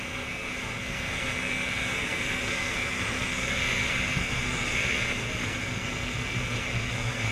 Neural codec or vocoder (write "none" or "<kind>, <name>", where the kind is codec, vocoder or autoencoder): codec, SNAC